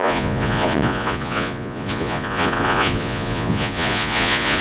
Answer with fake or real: fake